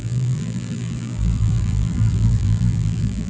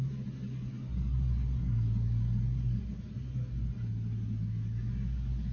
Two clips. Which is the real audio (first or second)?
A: second